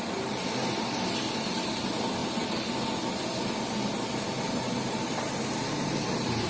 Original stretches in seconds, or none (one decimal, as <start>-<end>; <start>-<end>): 0.0-6.5